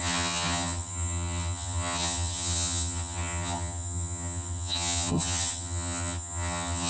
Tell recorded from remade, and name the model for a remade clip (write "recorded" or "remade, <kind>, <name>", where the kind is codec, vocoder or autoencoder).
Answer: remade, vocoder, HiFi-GAN